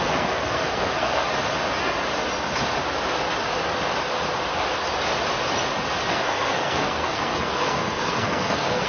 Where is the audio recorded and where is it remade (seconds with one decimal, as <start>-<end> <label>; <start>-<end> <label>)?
0.0-1.3 remade; 1.3-6.1 recorded; 6.1-8.9 remade